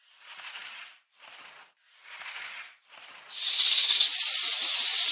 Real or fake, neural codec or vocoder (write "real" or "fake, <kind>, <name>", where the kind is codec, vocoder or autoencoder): real